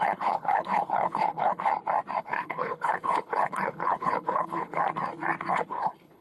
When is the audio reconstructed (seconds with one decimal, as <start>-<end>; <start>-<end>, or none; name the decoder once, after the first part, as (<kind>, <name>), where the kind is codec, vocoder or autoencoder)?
0.0-1.7 (codec, HILCodec); 2.2-4.8; 5.5-6.2